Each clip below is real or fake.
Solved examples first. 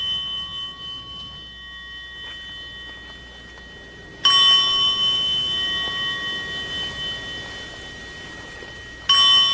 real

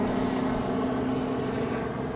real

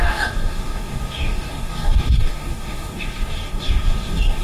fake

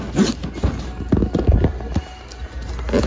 real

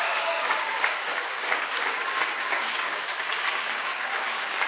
fake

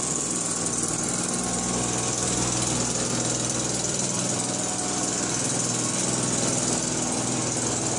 real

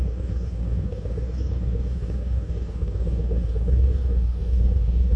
fake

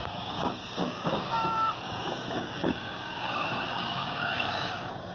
fake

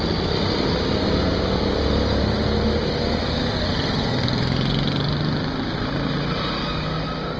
real